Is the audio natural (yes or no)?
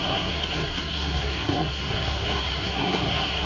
no